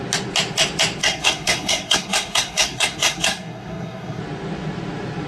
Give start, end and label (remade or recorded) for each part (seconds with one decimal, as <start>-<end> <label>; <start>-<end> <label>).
0.0-1.0 recorded; 1.0-4.2 remade; 4.2-5.3 recorded

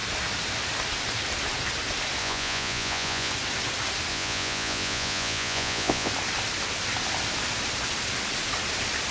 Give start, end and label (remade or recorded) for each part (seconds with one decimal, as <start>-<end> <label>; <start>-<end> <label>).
0.0-2.2 recorded; 2.2-3.3 remade; 3.3-4.1 recorded; 4.1-6.1 remade; 6.1-9.1 recorded

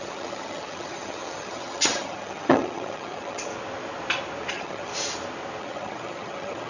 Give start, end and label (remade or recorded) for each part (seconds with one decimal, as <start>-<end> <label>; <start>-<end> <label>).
0.0-3.5 remade; 3.5-4.5 recorded; 4.5-4.9 remade; 4.9-5.6 recorded; 5.6-6.7 remade

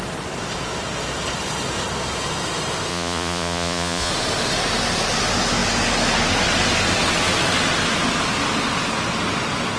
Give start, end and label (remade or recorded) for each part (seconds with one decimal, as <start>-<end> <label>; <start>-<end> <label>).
0.0-2.9 recorded; 2.9-4.1 remade; 4.1-9.8 recorded